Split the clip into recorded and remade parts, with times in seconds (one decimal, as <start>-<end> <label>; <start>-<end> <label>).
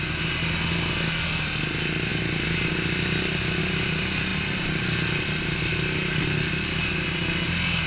0.0-7.9 recorded